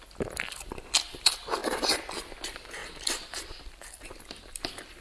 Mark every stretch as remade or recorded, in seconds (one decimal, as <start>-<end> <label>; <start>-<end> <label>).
0.0-2.8 recorded; 2.8-3.4 remade; 3.4-5.0 recorded